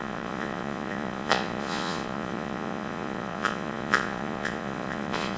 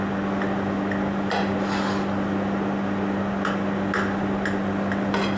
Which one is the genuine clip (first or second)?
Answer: second